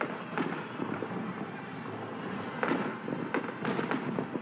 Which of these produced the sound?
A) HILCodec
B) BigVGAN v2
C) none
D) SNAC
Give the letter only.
C